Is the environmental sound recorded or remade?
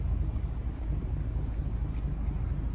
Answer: recorded